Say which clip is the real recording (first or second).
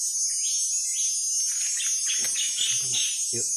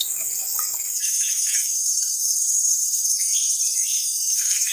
first